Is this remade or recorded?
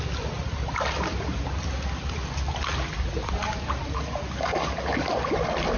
recorded